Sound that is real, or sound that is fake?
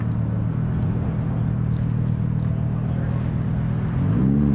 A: real